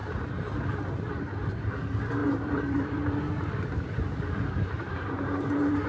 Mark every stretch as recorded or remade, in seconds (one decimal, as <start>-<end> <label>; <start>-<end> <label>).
0.0-1.5 recorded; 1.5-5.9 remade